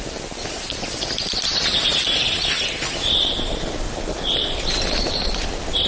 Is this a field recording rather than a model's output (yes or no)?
yes